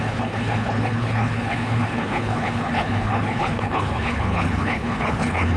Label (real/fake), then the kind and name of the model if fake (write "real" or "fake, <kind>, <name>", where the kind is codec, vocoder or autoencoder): fake, codec, HILCodec